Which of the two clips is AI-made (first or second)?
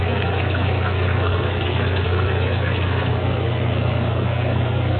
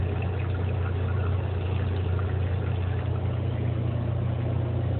first